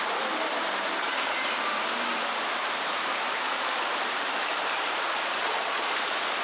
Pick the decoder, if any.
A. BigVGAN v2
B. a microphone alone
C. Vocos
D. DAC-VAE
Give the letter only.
A